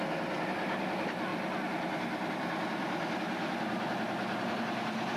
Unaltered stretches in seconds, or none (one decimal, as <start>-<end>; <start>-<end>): 0.0-5.2